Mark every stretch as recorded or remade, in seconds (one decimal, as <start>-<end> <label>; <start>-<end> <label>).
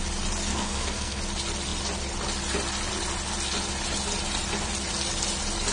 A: 0.0-0.5 recorded; 0.5-1.2 remade; 1.2-5.7 recorded